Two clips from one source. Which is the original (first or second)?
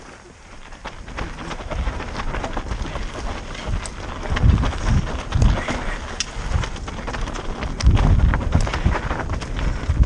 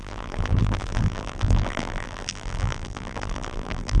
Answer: first